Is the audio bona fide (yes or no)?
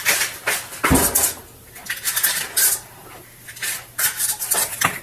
yes